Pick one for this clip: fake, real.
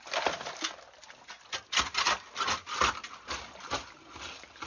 real